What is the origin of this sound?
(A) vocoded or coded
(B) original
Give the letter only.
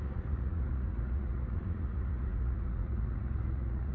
A